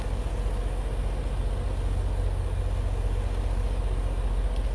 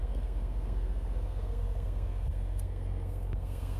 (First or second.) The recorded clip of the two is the first